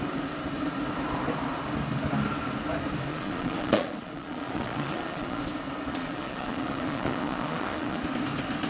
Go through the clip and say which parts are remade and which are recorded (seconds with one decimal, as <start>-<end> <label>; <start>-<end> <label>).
0.0-3.1 recorded; 3.1-5.4 remade; 5.4-5.9 recorded; 5.9-8.0 remade; 8.0-8.7 recorded